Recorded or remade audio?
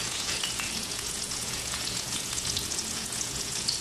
remade